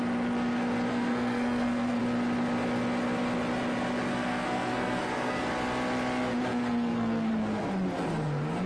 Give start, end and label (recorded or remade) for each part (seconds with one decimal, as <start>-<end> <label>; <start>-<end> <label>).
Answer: 0.0-0.9 recorded; 0.9-2.0 remade; 2.0-4.1 recorded; 4.1-5.4 remade; 5.4-6.5 recorded; 6.5-7.3 remade; 7.3-8.7 recorded